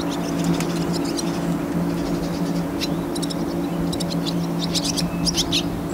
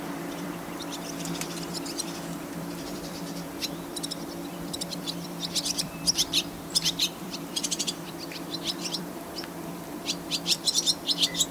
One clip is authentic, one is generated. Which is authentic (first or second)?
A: first